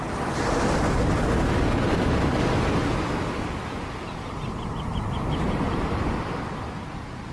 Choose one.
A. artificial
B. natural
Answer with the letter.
B